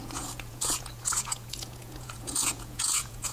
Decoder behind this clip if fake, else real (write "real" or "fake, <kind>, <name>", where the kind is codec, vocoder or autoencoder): fake, vocoder, Vocos